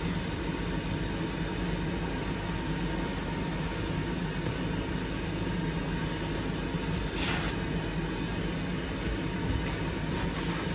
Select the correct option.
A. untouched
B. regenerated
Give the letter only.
A